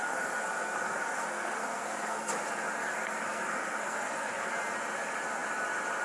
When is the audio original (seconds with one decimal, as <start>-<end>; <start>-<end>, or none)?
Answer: 2.3-2.8; 4.5-6.0